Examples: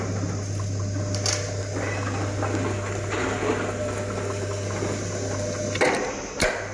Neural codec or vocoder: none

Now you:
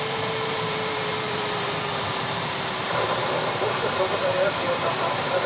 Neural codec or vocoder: vocoder, BigVGAN v2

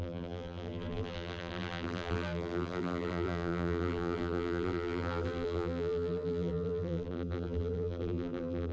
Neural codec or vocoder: vocoder, BigVGAN v2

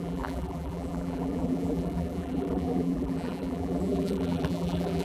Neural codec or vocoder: vocoder, BigVGAN v2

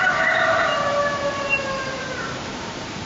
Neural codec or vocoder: vocoder, BigVGAN v2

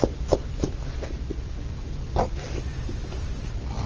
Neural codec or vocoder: none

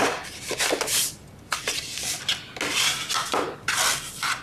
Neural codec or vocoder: none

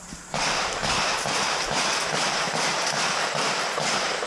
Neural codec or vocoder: vocoder, BigVGAN v2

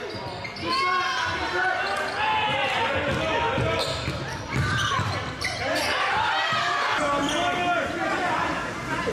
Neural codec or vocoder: none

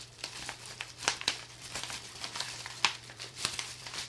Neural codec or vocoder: vocoder, BigVGAN v2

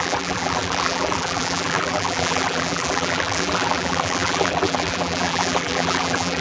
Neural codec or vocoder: vocoder, BigVGAN v2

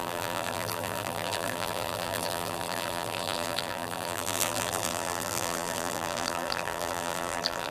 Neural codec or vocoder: vocoder, BigVGAN v2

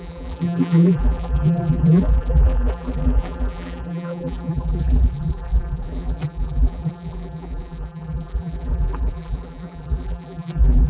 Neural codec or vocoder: vocoder, BigVGAN v2